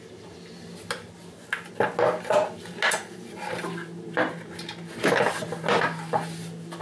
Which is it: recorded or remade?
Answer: recorded